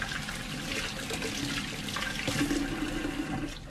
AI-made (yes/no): no